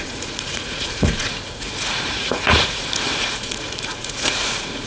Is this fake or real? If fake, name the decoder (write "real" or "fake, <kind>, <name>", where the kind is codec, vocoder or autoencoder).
fake, vocoder, Vocos